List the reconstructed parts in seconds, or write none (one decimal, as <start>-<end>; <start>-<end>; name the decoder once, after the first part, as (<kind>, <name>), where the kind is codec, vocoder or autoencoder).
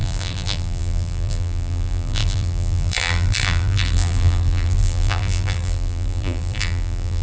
0.0-7.2 (vocoder, BigVGAN v2)